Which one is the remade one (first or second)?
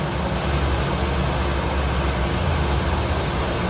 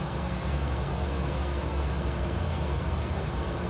second